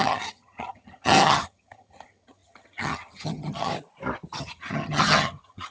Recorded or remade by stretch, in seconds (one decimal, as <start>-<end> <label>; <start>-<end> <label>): 0.0-3.7 remade; 3.7-4.4 recorded; 4.4-5.7 remade